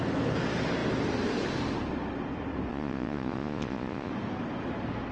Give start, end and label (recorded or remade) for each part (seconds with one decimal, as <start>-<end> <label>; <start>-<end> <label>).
0.0-2.7 recorded; 2.7-4.1 remade; 4.1-5.1 recorded